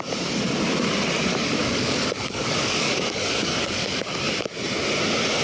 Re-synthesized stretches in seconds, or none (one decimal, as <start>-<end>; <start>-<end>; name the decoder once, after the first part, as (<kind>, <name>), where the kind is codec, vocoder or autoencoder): 1.3-3.8 (codec, DAC)